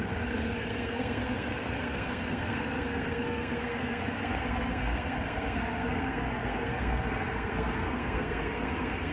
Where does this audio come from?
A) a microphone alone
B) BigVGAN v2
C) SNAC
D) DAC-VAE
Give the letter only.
C